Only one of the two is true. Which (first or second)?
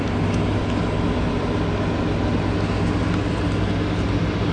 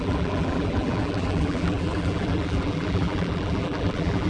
first